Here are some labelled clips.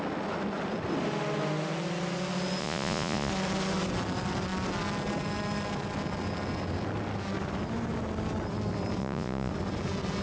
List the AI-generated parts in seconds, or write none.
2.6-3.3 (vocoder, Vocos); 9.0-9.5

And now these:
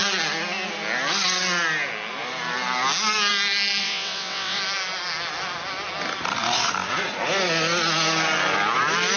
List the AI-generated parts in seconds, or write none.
3.8-4.6 (vocoder, WaveNeXt)

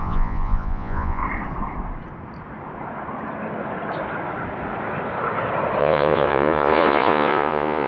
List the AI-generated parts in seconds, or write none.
0.0-1.2 (vocoder, Vocos); 5.8-7.9

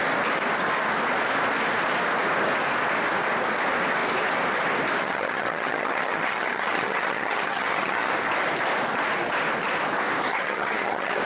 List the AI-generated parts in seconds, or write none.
5.0-8.1 (vocoder, HiFi-GAN); 10.3-11.2

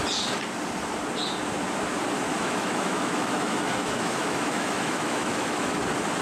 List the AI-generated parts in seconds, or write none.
2.3-5.8 (autoencoder, DAC-VAE)

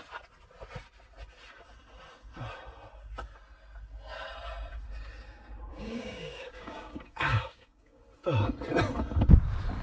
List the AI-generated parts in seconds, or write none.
5.7-8.0 (codec, DAC)

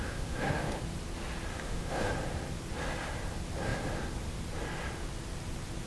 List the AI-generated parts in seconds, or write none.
0.0-0.8 (autoencoder, DAC-VAE); 1.5-2.1